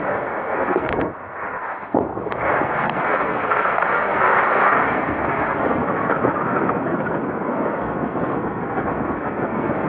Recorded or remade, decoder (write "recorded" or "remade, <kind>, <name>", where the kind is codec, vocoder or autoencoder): remade, codec, SNAC